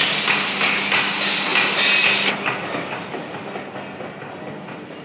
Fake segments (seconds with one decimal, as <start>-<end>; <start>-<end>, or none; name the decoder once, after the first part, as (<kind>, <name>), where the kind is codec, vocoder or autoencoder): none